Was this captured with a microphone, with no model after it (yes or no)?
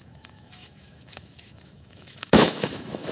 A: no